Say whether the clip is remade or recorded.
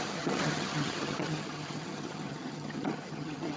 remade